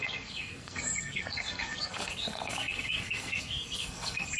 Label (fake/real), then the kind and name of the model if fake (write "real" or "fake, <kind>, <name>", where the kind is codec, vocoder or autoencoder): fake, codec, SNAC